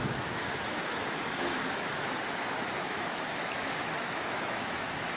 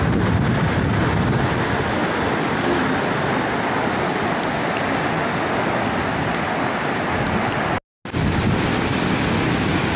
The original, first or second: second